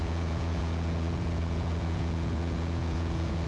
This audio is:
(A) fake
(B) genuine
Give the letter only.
A